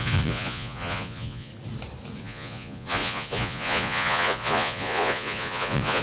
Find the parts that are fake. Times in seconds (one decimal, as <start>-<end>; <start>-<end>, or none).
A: 0.0-1.5; 2.2-6.0